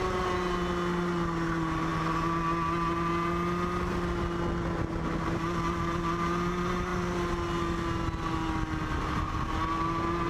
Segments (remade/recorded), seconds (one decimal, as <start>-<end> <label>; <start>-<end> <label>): 0.0-10.3 recorded